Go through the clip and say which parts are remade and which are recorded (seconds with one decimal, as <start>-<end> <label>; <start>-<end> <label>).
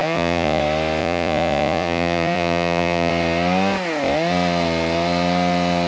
0.0-0.6 remade; 0.6-1.0 recorded; 1.0-3.1 remade; 3.1-5.9 recorded